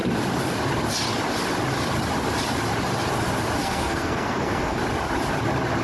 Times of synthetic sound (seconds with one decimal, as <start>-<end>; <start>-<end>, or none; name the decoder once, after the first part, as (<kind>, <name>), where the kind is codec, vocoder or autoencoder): 3.6-4.8 (codec, SNAC)